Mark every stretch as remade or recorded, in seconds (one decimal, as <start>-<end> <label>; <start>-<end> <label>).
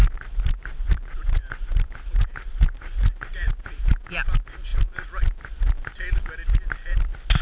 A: 0.0-3.5 remade; 3.5-7.4 recorded